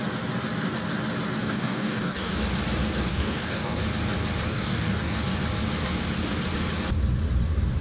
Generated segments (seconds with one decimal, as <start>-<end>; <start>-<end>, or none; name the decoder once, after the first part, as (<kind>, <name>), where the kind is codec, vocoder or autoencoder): 1.4-2.4 (codec, DAC); 3.1-3.8; 4.5-5.2